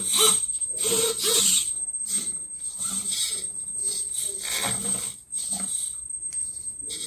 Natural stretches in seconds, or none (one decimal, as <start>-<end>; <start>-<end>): 0.0-0.6; 1.4-6.4